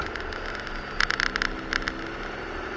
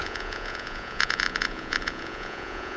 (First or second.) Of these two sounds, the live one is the first